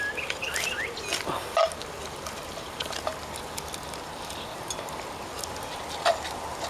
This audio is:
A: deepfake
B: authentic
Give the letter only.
B